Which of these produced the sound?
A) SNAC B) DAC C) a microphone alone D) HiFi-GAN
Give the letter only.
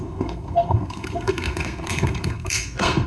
A